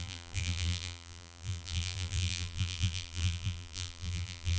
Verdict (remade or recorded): remade